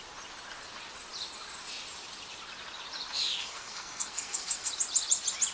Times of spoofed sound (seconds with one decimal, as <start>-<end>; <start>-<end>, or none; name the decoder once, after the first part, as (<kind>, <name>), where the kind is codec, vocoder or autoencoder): 3.4-4.7 (codec, SNAC)